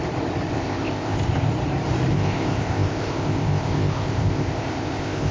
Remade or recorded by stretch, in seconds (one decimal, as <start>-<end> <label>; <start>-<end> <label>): 0.0-0.5 recorded; 0.5-1.5 remade; 1.5-2.1 recorded; 2.1-5.3 remade